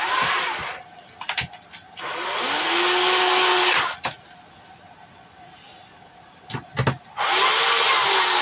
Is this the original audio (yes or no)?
yes